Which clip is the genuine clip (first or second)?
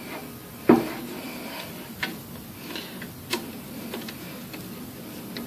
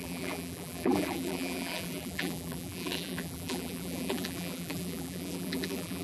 first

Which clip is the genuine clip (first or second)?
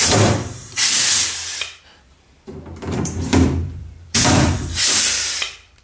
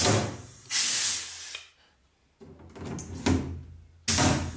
second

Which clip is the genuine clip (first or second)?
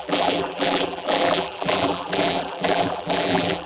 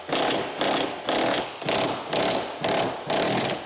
second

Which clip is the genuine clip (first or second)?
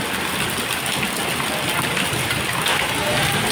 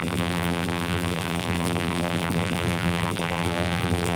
first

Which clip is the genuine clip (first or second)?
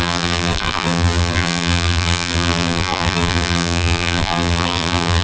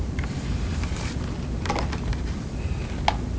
second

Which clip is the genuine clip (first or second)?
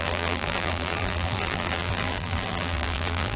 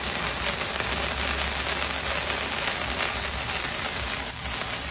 second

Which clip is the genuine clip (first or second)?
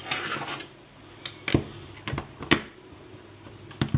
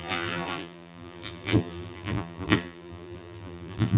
first